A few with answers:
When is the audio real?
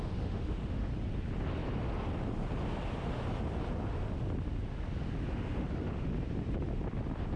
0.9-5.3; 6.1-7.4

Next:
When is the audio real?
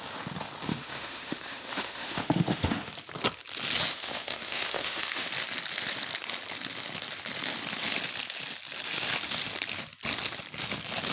0.0-0.7; 2.9-3.9; 5.3-11.1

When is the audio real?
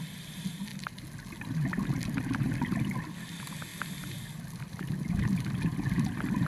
0.0-6.5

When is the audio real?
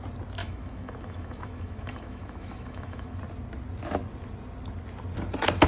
0.0-0.4; 3.2-5.7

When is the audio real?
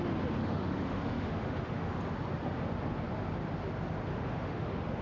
0.0-0.4; 2.0-4.1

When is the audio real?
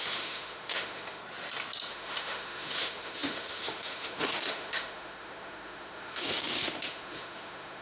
1.2-1.9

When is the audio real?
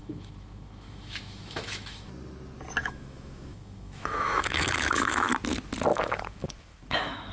2.1-2.8; 5.3-5.9